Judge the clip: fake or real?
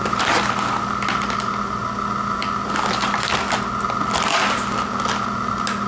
real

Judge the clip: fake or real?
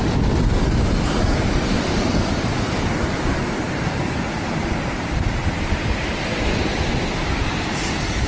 real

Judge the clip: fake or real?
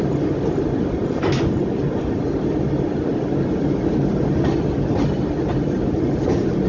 real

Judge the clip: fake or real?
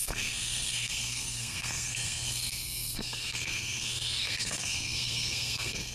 fake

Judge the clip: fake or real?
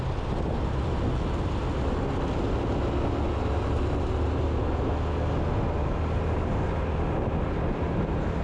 real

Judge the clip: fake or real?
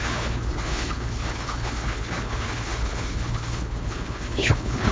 fake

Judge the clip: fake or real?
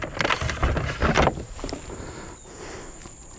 real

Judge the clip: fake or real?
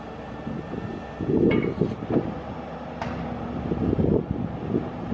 real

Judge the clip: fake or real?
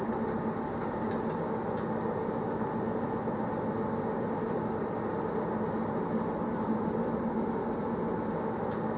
real